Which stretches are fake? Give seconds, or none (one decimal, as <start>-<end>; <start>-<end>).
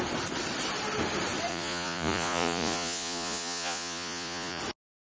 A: 1.5-4.6